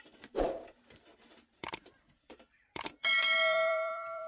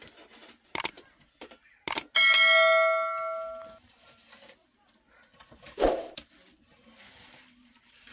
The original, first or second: second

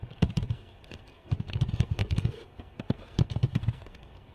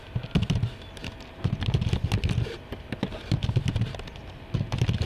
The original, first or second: second